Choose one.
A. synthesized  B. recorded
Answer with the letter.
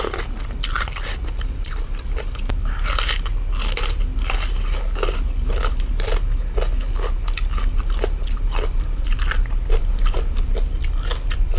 B